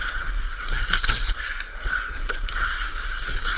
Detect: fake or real fake